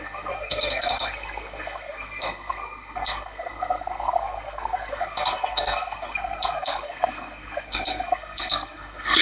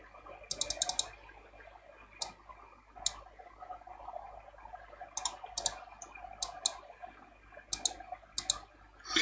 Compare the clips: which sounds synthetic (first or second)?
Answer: first